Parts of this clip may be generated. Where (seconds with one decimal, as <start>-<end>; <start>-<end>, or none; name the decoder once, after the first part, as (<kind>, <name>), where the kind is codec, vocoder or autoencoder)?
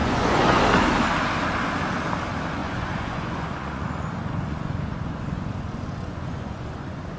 0.0-0.6 (vocoder, Vocos); 2.6-7.2